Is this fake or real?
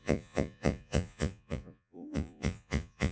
fake